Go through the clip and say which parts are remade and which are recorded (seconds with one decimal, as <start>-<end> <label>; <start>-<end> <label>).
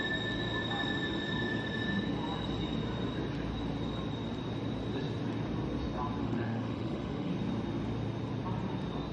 0.0-6.2 recorded; 6.2-7.3 remade; 7.3-9.1 recorded